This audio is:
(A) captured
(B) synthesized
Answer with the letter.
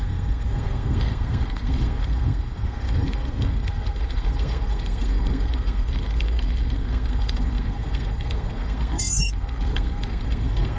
B